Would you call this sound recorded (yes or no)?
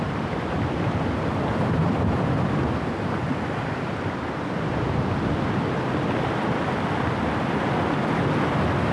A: no